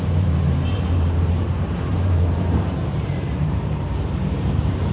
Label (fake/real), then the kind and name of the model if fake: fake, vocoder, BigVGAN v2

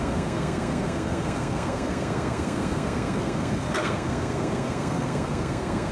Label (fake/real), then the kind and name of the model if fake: fake, codec, SNAC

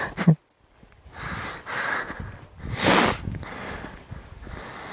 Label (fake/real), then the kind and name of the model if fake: real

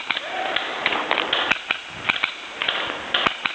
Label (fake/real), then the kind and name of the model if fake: real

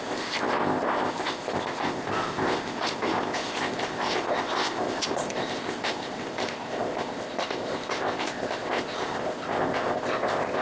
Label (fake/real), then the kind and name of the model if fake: fake, codec, ZipCodec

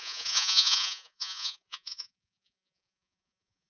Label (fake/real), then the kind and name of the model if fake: fake, vocoder, Vocos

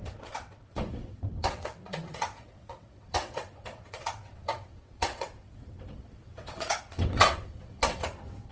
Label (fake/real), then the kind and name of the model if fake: fake, vocoder, WaveNeXt